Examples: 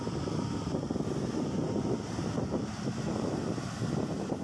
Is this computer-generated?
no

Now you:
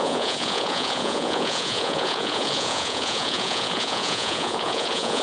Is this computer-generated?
yes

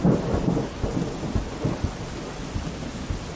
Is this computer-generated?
no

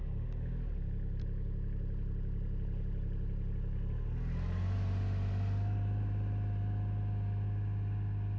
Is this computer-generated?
no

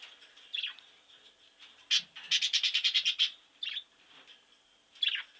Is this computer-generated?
no